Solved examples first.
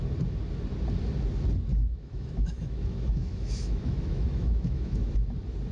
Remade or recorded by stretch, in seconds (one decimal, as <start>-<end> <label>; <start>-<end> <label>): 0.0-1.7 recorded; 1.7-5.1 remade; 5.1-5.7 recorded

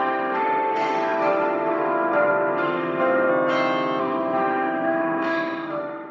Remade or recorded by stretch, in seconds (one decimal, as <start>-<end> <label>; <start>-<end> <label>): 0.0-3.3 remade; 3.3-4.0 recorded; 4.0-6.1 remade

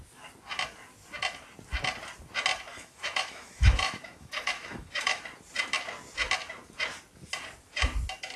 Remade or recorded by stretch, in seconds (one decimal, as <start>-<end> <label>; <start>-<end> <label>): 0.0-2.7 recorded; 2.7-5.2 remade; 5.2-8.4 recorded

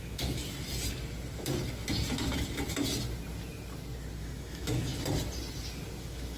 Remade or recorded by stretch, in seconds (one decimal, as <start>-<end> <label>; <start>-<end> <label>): 0.0-0.4 remade; 0.4-4.2 recorded; 4.2-4.9 remade; 4.9-6.0 recorded; 6.0-6.4 remade